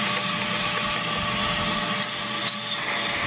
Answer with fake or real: real